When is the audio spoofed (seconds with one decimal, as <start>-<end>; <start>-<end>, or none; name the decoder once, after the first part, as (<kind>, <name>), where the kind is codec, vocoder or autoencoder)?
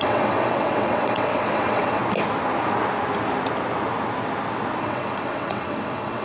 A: 0.0-2.0 (vocoder, WaveNeXt); 4.8-6.2